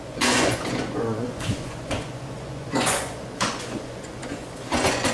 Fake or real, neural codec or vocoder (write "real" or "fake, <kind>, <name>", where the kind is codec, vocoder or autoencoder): fake, vocoder, Vocos